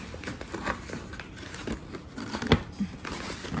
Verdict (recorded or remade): recorded